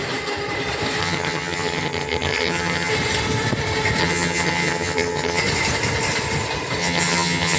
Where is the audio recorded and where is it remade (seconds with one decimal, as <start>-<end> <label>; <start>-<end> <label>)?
0.0-1.0 recorded; 1.0-2.9 remade; 2.9-4.0 recorded; 4.0-5.4 remade; 5.4-6.8 recorded; 6.8-7.6 remade